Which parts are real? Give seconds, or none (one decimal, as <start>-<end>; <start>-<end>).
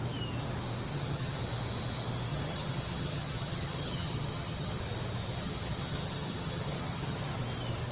0.0-0.9; 1.4-2.3; 4.8-5.3; 7.4-7.9